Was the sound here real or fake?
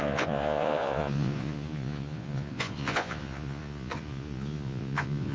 fake